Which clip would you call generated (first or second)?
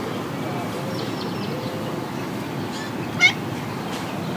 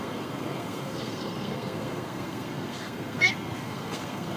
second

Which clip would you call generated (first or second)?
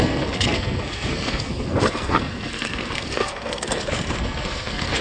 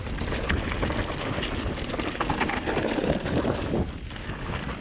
first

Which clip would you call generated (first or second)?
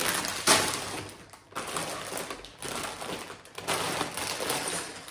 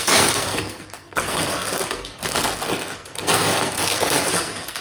second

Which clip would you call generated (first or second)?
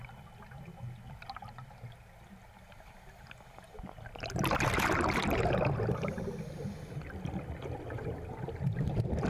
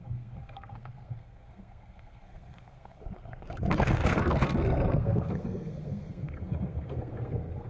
second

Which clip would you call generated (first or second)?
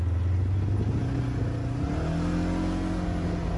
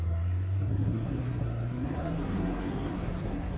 second